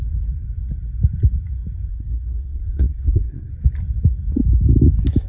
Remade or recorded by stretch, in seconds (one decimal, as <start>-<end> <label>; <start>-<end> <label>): 0.0-1.9 recorded; 1.9-3.5 remade; 3.5-5.3 recorded